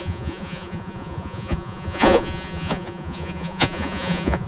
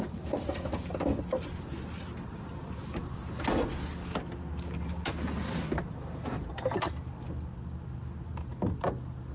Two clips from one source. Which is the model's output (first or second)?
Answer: first